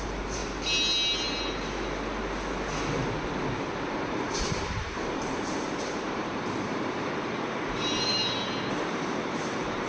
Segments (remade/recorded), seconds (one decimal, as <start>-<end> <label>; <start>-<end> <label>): 0.0-0.4 remade; 0.4-3.9 recorded; 3.9-8.2 remade; 8.2-8.7 recorded; 8.7-9.9 remade